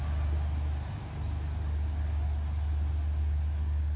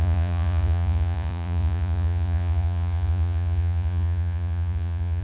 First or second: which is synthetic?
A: second